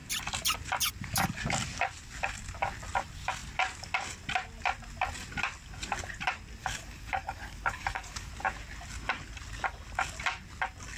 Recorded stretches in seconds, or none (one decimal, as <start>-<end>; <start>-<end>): 0.0-6.6; 8.3-11.0